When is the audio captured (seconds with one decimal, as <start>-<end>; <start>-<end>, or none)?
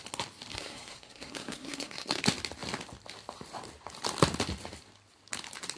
0.0-0.5; 2.2-5.8